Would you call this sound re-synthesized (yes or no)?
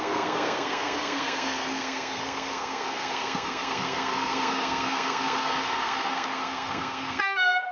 yes